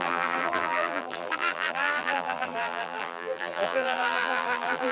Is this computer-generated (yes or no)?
yes